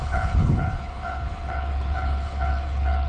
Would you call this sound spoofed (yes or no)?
yes